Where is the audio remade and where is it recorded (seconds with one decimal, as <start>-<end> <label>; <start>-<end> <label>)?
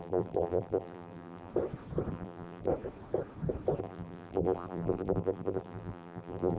0.0-1.5 remade; 1.5-2.1 recorded; 2.1-2.7 remade; 2.7-3.8 recorded; 3.8-6.6 remade